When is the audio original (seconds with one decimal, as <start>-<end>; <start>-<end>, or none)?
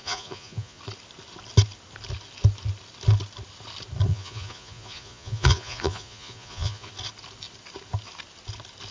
0.8-4.1; 6.9-8.9